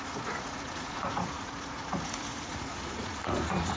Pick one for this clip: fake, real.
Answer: fake